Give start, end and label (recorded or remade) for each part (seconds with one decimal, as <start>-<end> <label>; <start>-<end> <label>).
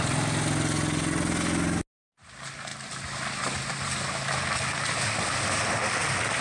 0.0-2.7 recorded; 2.7-4.6 remade; 4.6-6.4 recorded